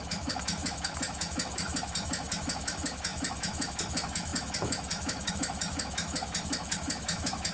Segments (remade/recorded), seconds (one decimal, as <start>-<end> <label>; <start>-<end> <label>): 0.0-7.5 remade

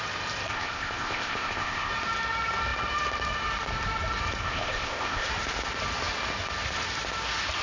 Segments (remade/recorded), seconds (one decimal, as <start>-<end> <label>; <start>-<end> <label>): 0.0-0.5 recorded; 0.5-1.9 remade; 1.9-4.4 recorded; 4.4-5.3 remade; 5.3-7.6 recorded

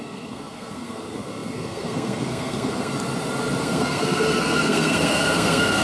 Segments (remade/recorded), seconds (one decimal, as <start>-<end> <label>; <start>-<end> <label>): 0.0-2.9 remade; 2.9-3.6 recorded; 3.6-5.8 remade

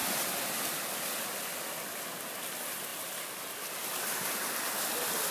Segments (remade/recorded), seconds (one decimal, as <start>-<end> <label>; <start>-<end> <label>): 0.0-5.3 recorded

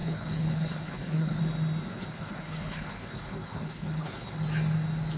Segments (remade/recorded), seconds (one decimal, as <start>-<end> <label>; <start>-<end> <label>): 0.0-1.4 remade; 1.4-1.9 recorded; 1.9-4.3 remade; 4.3-5.2 recorded

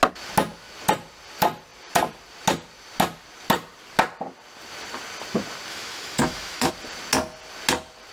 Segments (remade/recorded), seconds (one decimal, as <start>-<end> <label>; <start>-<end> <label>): 0.0-5.7 recorded; 5.7-6.7 remade; 6.7-8.1 recorded

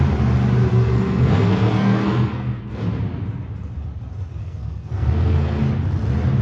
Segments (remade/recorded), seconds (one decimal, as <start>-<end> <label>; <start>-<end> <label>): 0.0-0.7 recorded; 0.7-2.7 remade; 2.7-4.4 recorded; 4.4-5.6 remade; 5.6-6.4 recorded

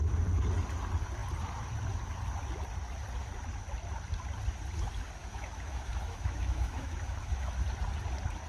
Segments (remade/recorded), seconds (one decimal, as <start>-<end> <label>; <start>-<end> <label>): 0.0-5.2 recorded; 5.2-7.5 remade; 7.5-8.5 recorded